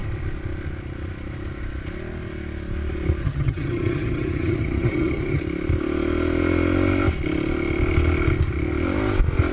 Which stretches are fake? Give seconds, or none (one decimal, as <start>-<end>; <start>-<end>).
3.2-5.4

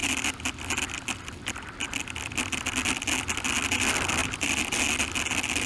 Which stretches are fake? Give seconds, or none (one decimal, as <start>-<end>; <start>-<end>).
0.0-1.3; 4.2-4.8

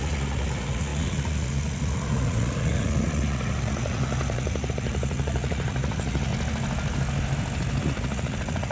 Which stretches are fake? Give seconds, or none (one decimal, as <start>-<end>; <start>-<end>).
0.0-6.3; 7.8-8.7

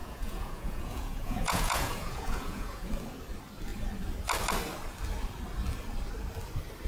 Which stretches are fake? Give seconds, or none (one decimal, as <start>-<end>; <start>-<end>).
0.0-2.9

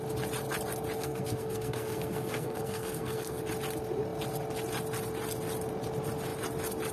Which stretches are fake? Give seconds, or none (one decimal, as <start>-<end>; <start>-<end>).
1.0-3.4

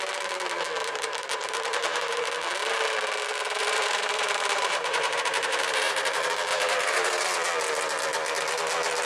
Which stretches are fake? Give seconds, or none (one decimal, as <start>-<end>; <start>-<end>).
0.8-2.3; 3.6-6.1; 6.5-7.1

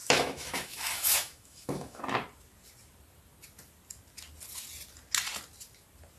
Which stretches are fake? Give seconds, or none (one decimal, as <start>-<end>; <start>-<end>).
0.0-2.0